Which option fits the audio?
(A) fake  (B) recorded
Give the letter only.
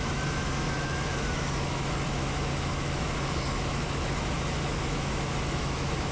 A